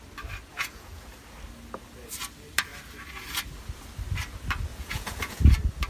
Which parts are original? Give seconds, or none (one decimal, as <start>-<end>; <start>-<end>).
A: 0.0-0.5; 1.1-4.7; 5.4-5.9